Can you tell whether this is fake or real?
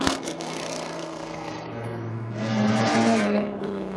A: fake